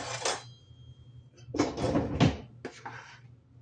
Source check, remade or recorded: recorded